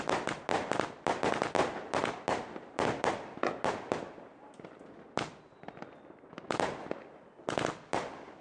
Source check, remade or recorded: recorded